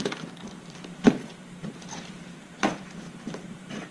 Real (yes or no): no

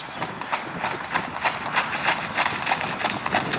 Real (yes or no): no